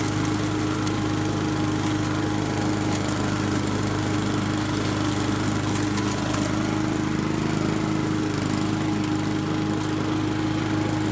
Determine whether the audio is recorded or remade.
recorded